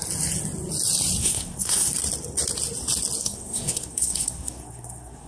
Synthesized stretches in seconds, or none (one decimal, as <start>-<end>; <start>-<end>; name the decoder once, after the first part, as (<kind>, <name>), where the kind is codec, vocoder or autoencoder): 1.2-1.9 (codec, SNAC); 3.2-5.3

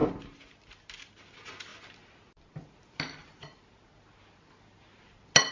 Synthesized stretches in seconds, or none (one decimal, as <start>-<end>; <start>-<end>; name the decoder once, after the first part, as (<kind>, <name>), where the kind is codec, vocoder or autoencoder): none